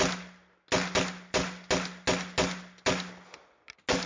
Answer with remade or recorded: recorded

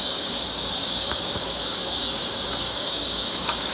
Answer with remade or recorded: remade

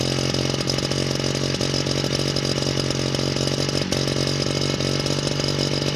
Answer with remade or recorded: recorded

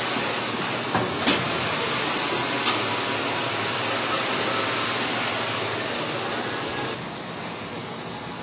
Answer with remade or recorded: recorded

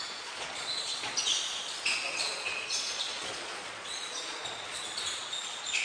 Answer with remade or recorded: remade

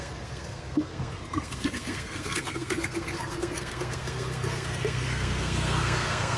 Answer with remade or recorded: remade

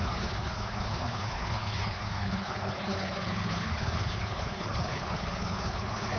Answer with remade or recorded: remade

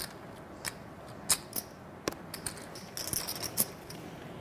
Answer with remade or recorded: recorded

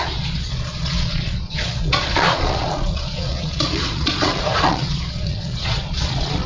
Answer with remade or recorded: remade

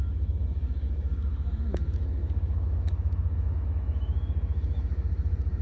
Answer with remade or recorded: remade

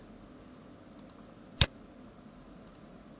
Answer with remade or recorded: recorded